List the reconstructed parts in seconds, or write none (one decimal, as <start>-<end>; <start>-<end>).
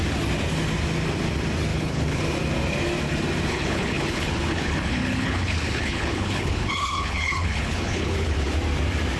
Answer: 1.7-2.2; 3.5-8.5